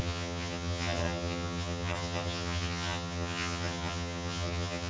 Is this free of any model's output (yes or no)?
no